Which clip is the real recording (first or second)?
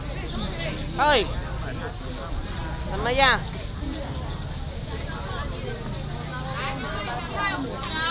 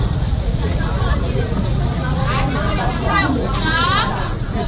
first